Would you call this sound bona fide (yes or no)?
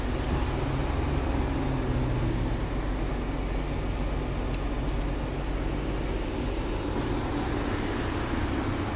yes